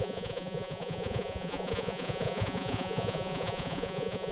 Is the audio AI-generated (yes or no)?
yes